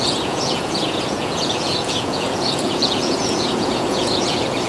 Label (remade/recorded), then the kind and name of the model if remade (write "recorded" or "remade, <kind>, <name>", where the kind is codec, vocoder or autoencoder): remade, vocoder, Vocos